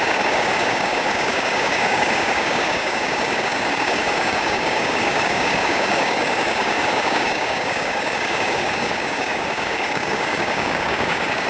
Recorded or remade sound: remade